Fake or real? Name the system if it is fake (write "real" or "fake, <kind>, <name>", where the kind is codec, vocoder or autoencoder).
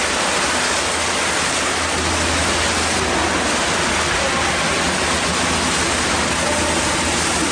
real